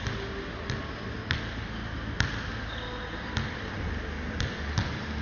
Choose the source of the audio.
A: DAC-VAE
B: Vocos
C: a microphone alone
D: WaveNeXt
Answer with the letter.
C